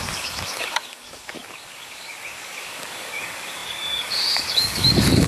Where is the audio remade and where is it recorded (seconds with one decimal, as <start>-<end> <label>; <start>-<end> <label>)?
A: 0.0-5.3 remade